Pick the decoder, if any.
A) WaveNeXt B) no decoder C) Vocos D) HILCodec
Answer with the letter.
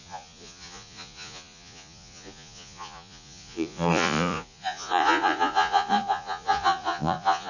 C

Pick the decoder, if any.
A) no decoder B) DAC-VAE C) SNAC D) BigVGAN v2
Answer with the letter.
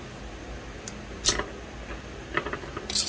A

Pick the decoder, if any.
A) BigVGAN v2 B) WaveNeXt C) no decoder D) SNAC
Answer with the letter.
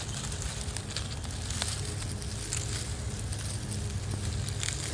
C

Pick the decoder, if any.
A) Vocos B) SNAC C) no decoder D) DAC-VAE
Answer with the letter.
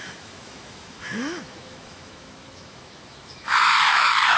D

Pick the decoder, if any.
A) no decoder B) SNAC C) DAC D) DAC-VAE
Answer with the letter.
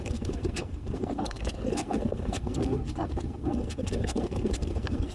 B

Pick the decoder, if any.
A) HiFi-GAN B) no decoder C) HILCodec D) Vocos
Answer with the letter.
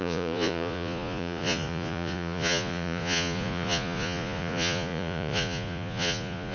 D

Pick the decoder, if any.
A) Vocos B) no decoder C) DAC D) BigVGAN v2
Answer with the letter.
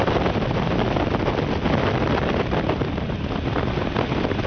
D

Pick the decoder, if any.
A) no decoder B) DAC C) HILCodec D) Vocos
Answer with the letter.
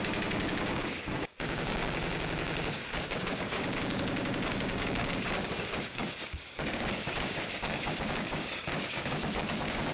B